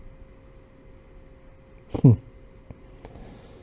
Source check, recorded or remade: recorded